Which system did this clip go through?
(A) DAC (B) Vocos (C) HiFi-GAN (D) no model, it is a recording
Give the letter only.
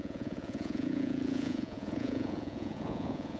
B